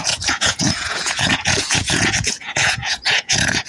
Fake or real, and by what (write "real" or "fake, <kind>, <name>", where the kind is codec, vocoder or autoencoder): fake, vocoder, Vocos